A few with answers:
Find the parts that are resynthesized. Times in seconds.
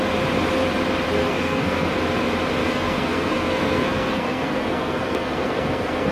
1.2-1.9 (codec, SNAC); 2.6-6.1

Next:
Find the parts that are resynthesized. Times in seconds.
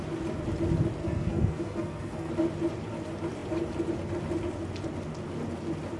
1.0-2.3 (codec, SNAC)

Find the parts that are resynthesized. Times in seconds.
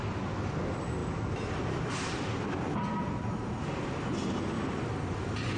none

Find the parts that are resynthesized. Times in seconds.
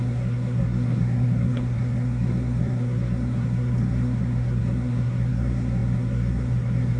0.0-7.0 (codec, SNAC)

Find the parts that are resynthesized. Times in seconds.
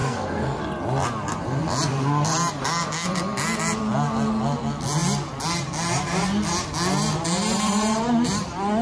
0.0-0.6 (codec, SNAC)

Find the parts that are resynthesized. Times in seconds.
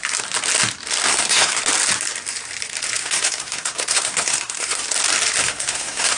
1.1-1.6 (codec, SNAC); 3.0-4.8; 5.4-6.2